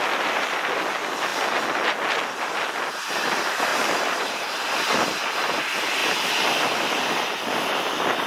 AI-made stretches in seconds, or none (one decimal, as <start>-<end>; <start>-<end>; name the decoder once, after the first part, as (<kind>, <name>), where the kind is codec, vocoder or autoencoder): 3.7-4.5 (vocoder, BigVGAN v2)